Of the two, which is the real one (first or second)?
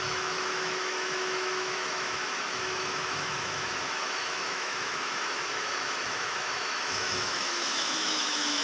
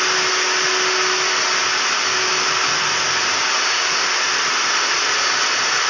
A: second